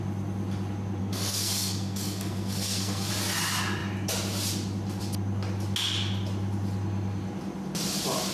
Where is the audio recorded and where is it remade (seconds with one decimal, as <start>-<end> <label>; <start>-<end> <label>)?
0.0-1.0 recorded; 1.0-3.1 remade; 3.1-8.3 recorded